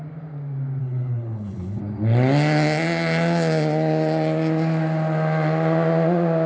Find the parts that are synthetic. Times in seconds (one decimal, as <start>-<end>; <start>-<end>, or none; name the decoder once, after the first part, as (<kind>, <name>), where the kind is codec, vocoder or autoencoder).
0.8-1.8 (codec, HILCodec)